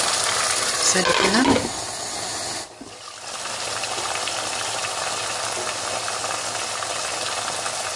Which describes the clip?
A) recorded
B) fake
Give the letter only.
A